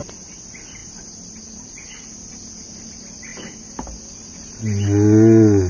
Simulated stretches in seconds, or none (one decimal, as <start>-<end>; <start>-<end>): none